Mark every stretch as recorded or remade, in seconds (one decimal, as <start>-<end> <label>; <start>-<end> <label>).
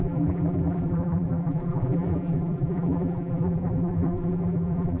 0.0-5.0 remade